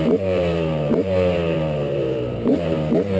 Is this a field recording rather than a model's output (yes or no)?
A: no